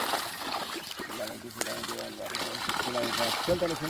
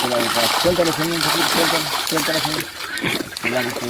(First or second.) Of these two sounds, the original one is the first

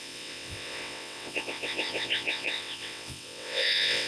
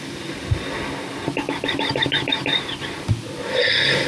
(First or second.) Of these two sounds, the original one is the second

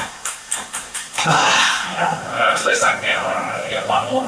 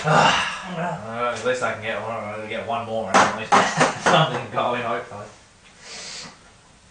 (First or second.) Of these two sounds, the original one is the second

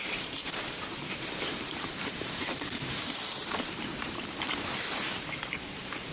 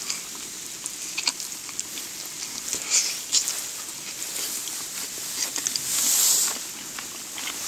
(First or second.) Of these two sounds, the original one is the second